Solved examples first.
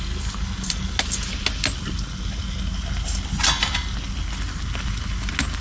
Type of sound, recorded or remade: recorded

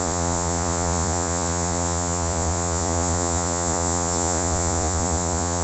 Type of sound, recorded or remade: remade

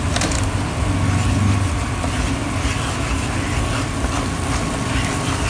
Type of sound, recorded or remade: recorded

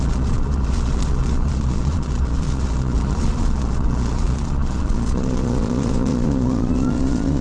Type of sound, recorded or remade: remade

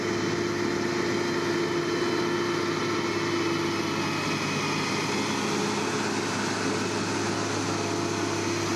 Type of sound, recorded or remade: recorded